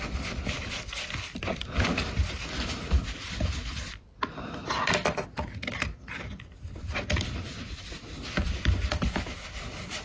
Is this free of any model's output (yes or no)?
yes